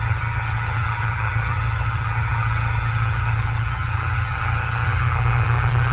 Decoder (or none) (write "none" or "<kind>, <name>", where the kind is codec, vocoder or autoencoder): vocoder, HiFi-GAN